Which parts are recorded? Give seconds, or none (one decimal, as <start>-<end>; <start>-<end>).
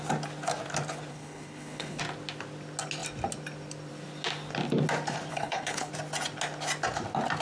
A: 0.0-1.1; 2.0-5.3; 5.9-7.4